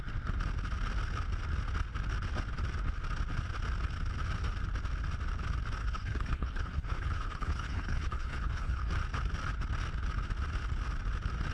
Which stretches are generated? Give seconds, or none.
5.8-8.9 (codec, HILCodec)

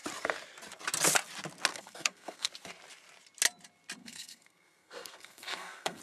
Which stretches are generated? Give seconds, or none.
1.7-2.5 (codec, SNAC); 4.0-6.0

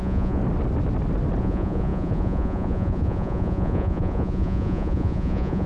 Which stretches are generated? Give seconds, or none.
0.0-0.4 (vocoder, Vocos); 1.4-5.7

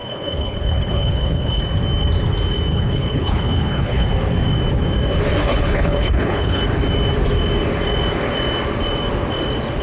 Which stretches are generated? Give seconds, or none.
0.0-1.6 (codec, HILCodec); 2.7-4.1; 5.4-6.6

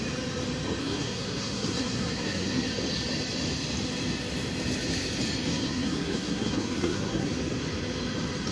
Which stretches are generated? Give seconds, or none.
0.8-2.7 (codec, SNAC); 5.5-7.3

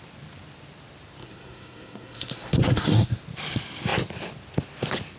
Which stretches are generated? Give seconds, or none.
1.2-3.2 (codec, SNAC)

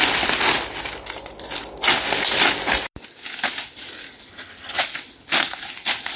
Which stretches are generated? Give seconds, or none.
4.3-4.8 (vocoder, HiFi-GAN)